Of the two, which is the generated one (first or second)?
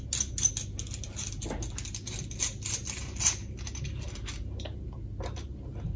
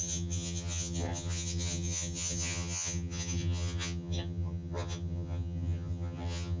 second